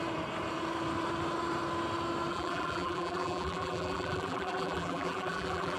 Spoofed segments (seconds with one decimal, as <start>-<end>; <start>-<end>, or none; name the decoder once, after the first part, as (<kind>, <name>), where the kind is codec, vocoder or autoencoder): 2.3-5.8 (vocoder, BigVGAN v2)